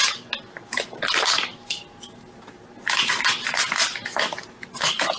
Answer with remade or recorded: recorded